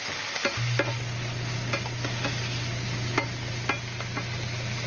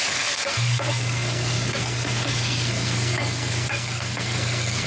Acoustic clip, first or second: first